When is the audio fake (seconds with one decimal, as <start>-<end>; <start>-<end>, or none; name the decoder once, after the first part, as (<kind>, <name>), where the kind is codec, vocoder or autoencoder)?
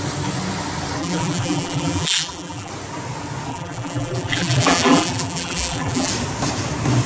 1.0-2.7 (vocoder, BigVGAN v2); 3.5-6.1